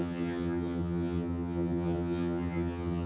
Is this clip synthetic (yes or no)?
yes